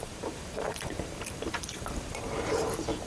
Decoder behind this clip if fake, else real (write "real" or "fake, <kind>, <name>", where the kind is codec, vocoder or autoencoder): fake, vocoder, BigVGAN v2